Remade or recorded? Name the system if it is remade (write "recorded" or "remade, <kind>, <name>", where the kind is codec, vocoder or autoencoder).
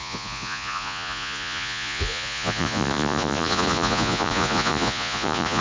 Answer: remade, vocoder, Vocos